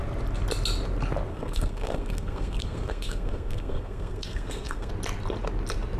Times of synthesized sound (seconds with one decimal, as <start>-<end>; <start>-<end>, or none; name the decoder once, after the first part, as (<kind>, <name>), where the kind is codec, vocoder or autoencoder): 1.3-4.9 (codec, SNAC)

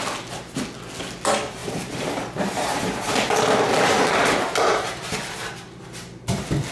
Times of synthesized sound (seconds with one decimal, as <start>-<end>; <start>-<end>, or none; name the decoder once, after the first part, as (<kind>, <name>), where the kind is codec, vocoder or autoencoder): 1.6-5.3 (vocoder, BigVGAN v2)

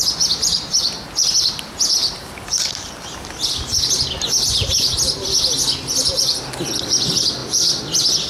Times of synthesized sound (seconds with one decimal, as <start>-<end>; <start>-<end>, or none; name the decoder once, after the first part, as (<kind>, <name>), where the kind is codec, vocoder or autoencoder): 2.0-3.9 (vocoder, BigVGAN v2); 6.3-7.0

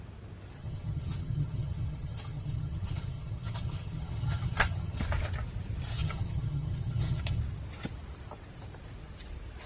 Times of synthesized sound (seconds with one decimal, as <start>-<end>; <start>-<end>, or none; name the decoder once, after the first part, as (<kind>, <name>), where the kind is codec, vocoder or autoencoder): 0.6-5.0 (vocoder, HiFi-GAN); 5.9-7.4

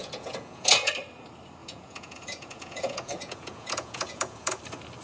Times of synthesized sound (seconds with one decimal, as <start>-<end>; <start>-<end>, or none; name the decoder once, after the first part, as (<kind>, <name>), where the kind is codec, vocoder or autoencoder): 0.0-0.9 (vocoder, Vocos); 1.6-4.6

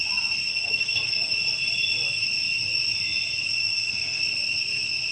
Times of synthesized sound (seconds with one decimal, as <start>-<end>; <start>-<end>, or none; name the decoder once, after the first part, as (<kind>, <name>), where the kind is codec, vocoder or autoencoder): 0.5-1.3 (codec, SNAC); 3.5-4.2

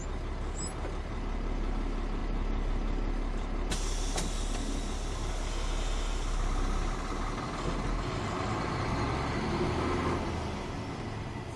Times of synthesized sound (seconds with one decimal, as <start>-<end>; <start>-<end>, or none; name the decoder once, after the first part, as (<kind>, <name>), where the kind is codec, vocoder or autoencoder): none

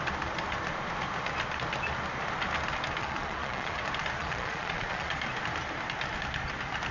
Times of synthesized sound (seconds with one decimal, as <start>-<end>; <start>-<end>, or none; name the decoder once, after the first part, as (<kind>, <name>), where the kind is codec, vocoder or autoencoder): 3.0-3.8 (vocoder, Vocos); 4.2-5.1